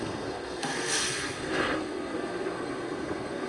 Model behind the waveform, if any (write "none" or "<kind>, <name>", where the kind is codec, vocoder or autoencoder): codec, SNAC